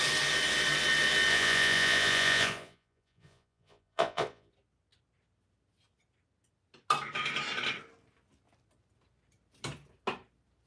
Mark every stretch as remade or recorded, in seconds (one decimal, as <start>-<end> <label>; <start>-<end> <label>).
0.0-1.3 recorded; 1.3-4.5 remade; 4.5-10.7 recorded